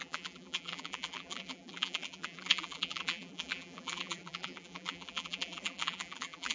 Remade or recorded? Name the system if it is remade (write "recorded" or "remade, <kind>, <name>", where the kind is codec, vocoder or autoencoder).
remade, vocoder, BigVGAN v2